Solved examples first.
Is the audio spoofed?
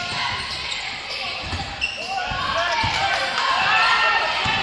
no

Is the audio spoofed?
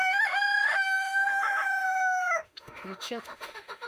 yes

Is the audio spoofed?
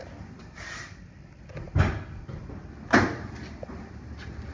no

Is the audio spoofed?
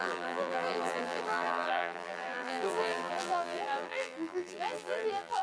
yes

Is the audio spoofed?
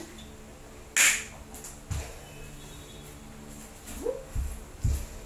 no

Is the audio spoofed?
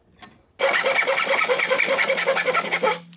no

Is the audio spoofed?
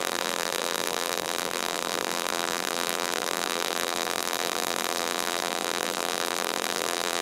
yes